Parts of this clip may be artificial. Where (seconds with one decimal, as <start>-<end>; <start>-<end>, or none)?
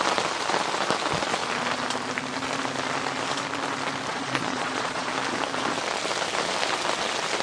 4.1-5.1